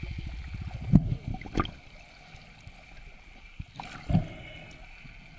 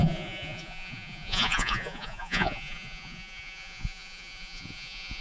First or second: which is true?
first